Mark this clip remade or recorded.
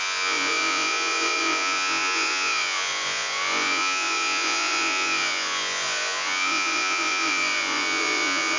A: remade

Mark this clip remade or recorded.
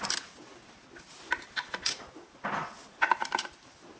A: recorded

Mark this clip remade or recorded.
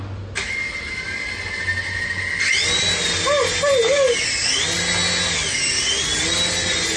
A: recorded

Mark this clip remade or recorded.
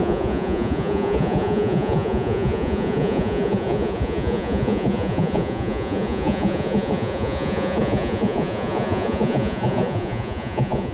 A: remade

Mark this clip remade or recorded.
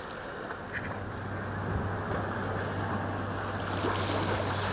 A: recorded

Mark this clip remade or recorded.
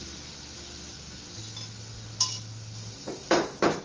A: recorded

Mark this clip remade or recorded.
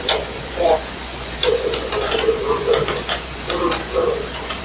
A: remade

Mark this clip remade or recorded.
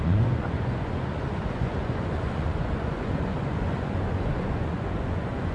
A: remade